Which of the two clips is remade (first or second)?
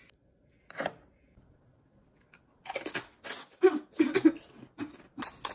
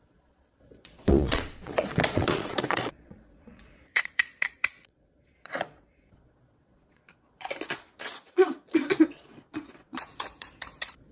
second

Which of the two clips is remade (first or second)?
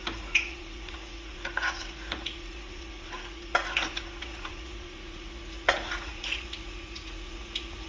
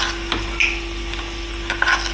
first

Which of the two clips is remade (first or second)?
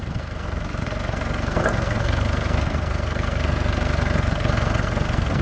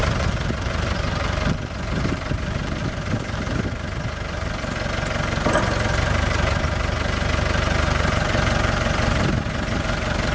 first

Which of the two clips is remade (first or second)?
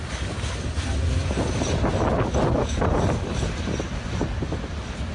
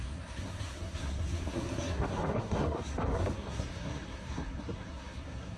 second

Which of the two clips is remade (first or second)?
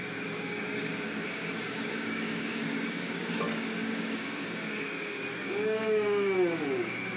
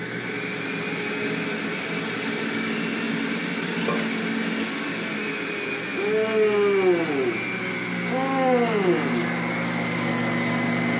first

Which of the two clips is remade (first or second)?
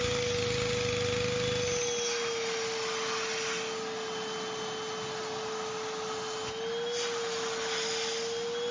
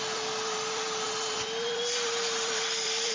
second